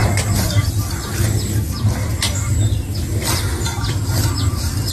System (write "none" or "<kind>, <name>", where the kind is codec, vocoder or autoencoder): none